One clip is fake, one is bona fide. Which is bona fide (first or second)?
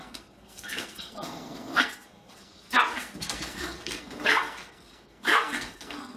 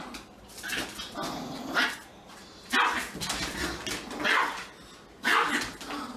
second